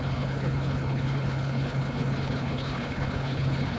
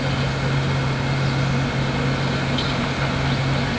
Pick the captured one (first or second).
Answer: second